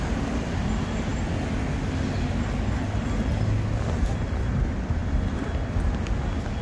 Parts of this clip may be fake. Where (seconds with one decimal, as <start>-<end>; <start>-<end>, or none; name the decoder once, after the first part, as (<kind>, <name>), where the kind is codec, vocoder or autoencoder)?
none